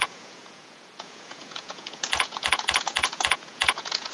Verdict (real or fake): fake